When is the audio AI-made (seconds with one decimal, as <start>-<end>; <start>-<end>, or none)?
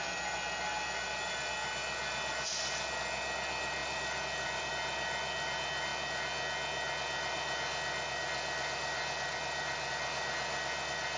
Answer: 3.8-4.7